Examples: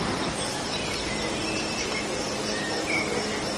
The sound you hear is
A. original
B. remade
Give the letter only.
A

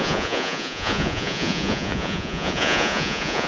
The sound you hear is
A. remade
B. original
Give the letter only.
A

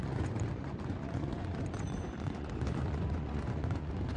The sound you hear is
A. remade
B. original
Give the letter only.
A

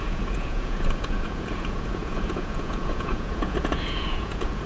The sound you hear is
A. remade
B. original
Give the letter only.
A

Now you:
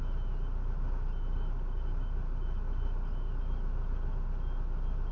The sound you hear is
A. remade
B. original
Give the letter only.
B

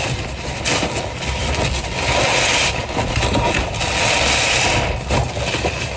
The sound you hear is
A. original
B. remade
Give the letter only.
A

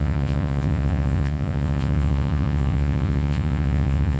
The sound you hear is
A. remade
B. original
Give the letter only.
A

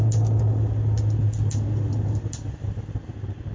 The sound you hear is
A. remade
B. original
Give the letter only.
B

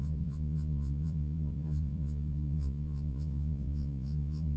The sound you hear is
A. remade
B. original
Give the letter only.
A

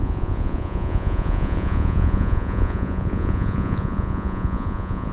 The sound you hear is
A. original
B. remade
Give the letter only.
B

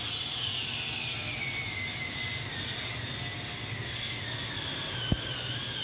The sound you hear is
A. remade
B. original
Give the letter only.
B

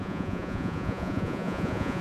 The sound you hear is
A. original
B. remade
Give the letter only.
B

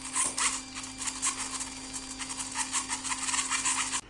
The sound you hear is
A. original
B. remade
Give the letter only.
A